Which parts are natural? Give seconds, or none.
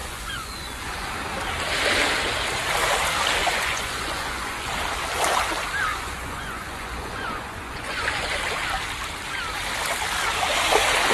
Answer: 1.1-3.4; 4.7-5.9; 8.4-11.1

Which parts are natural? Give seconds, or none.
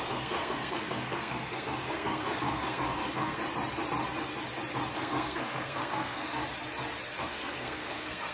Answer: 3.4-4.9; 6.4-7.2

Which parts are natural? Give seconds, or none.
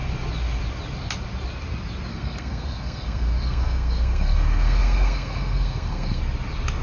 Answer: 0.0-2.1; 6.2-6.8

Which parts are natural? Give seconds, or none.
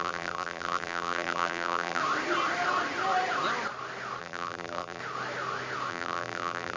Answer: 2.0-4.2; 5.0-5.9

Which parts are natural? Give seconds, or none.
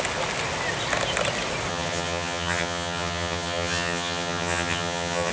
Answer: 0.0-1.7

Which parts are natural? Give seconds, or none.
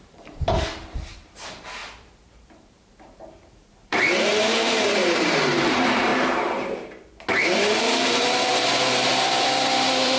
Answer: 6.1-7.8